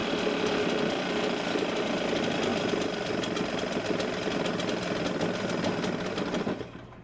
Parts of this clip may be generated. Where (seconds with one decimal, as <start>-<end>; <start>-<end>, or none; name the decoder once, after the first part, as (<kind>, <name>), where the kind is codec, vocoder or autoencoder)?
none